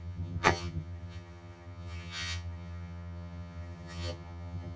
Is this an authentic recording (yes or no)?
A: no